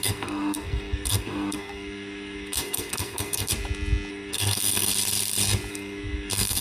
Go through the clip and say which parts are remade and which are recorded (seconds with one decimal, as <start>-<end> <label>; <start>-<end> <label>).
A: 0.0-3.5 remade; 3.5-4.1 recorded; 4.1-4.9 remade; 4.9-5.7 recorded; 5.7-6.6 remade